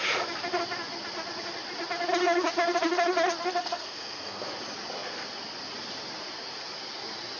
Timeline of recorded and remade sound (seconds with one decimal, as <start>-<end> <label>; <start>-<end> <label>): 0.0-3.6 recorded; 3.6-4.5 remade; 4.5-7.4 recorded